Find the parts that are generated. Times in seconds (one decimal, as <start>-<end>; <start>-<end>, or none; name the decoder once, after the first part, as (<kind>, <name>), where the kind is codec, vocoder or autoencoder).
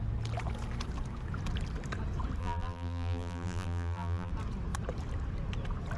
2.4-4.3 (vocoder, BigVGAN v2)